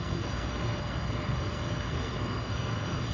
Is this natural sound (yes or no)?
no